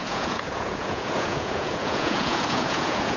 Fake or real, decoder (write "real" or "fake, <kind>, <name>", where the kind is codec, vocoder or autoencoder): fake, vocoder, Vocos